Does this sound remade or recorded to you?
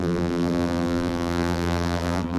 remade